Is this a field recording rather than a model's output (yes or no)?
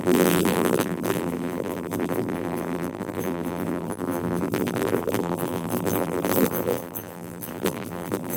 no